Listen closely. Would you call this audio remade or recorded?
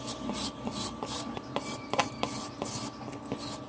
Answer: recorded